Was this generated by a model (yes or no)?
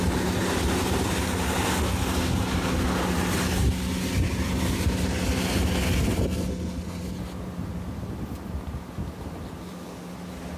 no